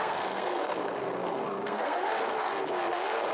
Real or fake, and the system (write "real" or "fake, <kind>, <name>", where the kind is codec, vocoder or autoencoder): fake, codec, SNAC